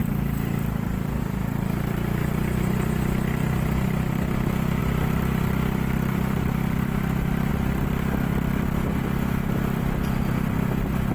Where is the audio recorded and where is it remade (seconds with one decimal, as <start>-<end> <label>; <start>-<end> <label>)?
0.0-1.2 remade; 1.2-11.1 recorded